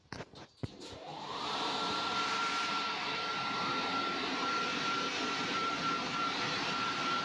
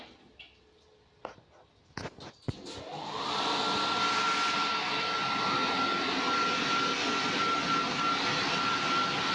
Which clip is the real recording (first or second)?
second